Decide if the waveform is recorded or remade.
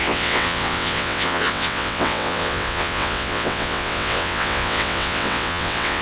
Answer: remade